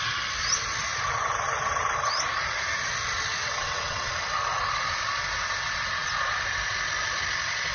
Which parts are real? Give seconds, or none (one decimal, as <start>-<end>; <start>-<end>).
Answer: 0.0-3.4; 4.1-7.7